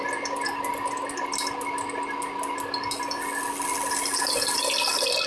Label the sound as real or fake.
real